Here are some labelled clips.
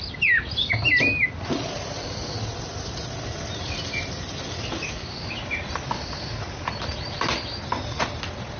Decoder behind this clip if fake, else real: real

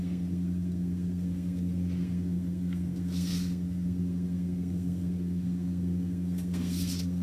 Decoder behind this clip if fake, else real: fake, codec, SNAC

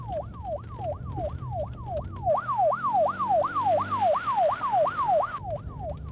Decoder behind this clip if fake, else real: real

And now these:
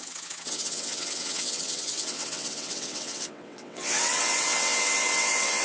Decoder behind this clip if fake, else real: fake, vocoder, WaveNeXt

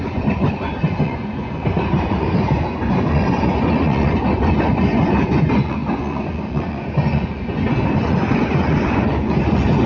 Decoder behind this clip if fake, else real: fake, vocoder, Vocos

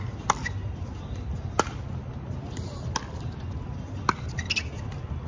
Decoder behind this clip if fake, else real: real